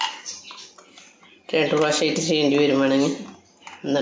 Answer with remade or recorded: recorded